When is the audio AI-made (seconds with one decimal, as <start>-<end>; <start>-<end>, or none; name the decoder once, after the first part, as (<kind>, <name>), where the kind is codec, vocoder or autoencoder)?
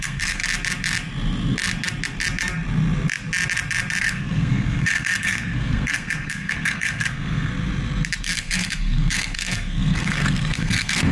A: 0.0-0.4 (codec, SNAC); 4.0-7.5; 8.2-11.1